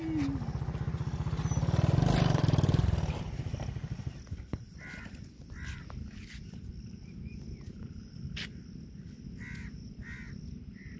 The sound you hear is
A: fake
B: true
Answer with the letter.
B